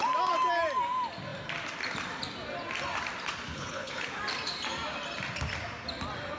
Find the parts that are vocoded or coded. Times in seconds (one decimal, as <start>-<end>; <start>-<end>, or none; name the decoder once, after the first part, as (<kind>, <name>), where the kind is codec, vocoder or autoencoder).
3.5-4.2 (codec, HILCodec)